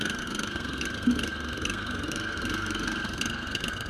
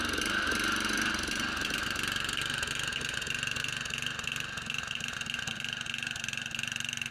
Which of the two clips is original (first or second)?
second